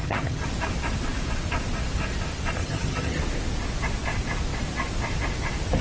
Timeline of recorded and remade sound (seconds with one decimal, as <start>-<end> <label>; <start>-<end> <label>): 0.0-0.5 remade; 0.5-2.6 recorded; 2.6-3.2 remade; 3.2-5.8 recorded